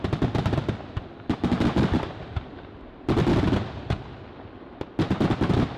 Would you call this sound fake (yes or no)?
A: no